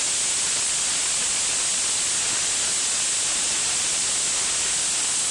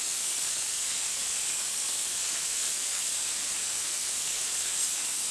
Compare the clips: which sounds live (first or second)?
first